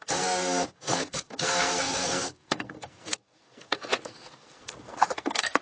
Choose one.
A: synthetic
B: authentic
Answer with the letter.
A